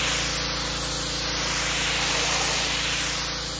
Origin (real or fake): real